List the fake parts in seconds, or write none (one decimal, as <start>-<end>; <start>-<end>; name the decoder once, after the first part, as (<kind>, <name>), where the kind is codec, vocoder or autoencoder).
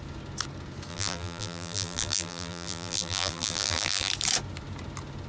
0.9-4.1 (vocoder, BigVGAN v2)